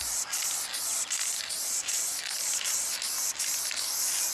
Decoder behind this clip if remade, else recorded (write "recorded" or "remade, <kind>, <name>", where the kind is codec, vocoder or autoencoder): recorded